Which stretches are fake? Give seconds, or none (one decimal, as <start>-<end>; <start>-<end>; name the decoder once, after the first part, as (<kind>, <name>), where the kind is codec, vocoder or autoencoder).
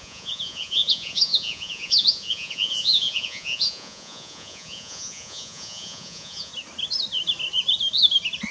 0.0-6.5 (vocoder, Vocos)